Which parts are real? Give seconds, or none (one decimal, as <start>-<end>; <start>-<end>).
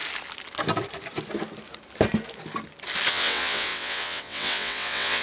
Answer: 0.0-3.1